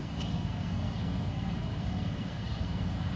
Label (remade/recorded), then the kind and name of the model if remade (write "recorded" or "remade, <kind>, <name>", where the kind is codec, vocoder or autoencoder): remade, codec, SNAC